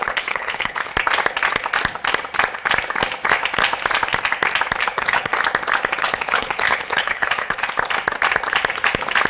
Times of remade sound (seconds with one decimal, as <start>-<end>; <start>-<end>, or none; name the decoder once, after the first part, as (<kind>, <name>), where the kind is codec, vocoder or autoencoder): 0.0-0.9 (codec, HILCodec); 4.8-5.3; 6.0-7.6